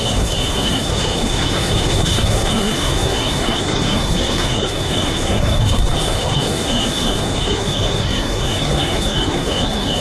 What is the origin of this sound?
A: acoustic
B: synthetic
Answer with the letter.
B